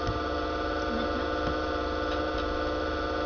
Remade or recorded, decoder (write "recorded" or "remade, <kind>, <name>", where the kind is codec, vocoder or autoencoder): recorded